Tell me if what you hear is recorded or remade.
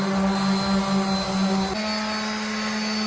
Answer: recorded